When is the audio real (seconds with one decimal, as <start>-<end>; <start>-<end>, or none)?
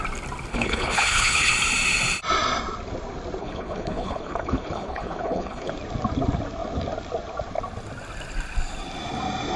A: 0.0-0.5; 1.5-3.4; 5.7-9.6